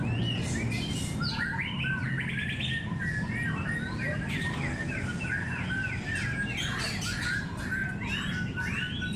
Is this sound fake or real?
real